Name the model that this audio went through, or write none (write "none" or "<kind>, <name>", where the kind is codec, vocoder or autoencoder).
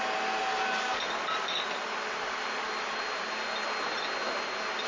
none